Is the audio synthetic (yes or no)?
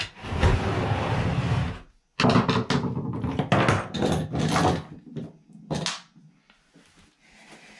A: no